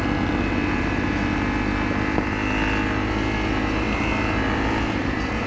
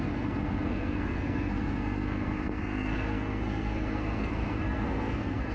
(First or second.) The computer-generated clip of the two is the second